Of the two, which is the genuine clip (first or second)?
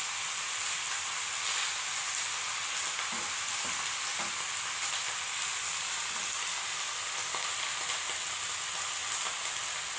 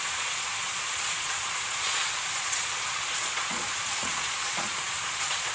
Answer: first